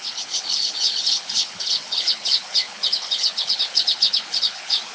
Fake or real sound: fake